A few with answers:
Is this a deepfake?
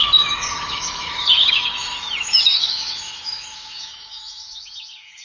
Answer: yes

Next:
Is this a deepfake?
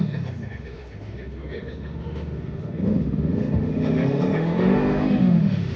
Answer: yes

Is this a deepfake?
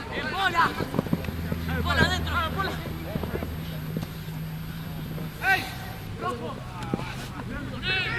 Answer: no